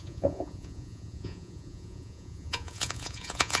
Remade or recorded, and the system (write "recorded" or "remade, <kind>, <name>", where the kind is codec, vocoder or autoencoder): remade, vocoder, Vocos